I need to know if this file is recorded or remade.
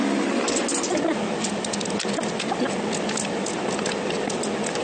recorded